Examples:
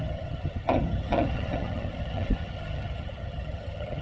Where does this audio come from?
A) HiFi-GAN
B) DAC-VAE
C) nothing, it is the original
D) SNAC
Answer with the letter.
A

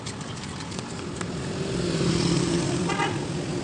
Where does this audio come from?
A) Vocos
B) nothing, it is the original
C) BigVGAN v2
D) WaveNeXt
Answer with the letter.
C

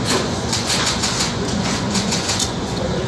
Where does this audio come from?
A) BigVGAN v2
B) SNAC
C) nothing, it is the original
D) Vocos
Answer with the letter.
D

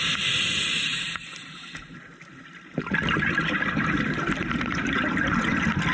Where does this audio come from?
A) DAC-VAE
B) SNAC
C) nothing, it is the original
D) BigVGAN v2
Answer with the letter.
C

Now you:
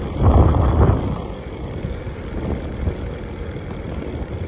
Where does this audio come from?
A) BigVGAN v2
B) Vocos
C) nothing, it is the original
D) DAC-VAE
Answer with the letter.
C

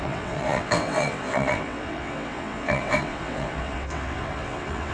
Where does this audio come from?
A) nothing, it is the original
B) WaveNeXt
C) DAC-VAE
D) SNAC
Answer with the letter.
B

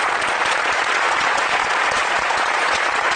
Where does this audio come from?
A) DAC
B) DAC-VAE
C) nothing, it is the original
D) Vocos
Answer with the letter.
D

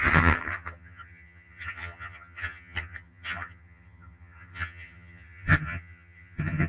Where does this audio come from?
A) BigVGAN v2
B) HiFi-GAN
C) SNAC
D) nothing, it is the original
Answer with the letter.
B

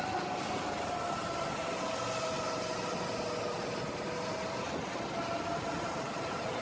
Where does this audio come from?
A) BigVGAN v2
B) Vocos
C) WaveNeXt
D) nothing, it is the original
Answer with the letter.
D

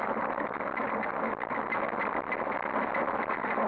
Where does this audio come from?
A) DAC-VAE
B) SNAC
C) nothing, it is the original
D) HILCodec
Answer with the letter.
C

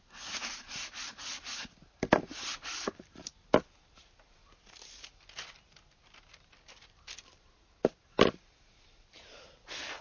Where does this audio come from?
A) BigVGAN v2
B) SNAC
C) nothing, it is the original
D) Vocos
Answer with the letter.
C